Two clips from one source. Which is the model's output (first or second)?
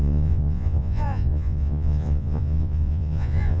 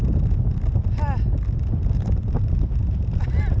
first